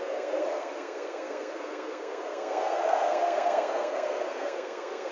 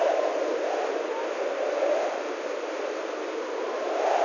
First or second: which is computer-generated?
first